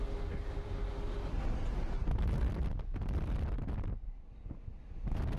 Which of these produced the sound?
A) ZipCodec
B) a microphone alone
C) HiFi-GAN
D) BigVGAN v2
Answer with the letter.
B